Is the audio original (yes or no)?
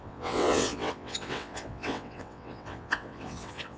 no